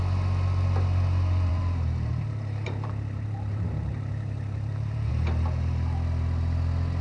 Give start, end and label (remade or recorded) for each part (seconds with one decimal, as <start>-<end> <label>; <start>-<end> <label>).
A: 0.0-1.5 recorded; 1.5-5.1 remade; 5.1-7.0 recorded